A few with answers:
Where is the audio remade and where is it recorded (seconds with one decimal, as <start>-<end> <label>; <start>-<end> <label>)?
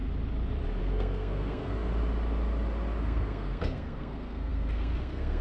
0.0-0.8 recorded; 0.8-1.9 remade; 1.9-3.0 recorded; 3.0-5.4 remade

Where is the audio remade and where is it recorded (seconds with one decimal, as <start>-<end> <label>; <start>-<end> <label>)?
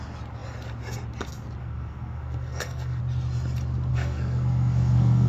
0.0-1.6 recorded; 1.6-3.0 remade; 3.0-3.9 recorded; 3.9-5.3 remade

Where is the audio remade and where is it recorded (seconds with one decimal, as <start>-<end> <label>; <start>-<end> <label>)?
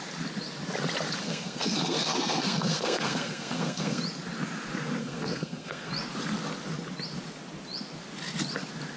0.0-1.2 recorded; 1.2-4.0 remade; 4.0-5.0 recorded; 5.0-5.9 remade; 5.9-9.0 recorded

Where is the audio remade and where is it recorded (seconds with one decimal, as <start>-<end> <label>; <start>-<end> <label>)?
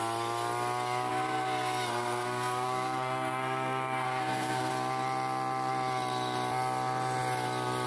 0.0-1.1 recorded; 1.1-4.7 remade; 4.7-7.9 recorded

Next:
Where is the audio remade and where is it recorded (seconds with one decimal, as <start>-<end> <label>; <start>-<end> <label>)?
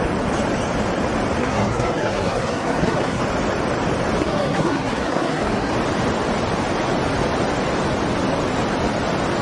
0.0-1.4 recorded; 1.4-3.2 remade; 3.2-4.2 recorded; 4.2-5.7 remade; 5.7-9.4 recorded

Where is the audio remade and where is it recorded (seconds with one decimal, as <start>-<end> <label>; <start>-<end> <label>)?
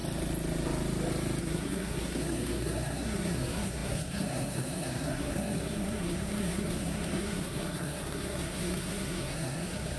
0.0-1.4 recorded; 1.4-10.0 remade